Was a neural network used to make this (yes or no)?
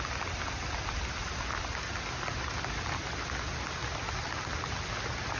no